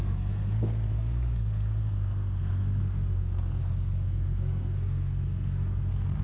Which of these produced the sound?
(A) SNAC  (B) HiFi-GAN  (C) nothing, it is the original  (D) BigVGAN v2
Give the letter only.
A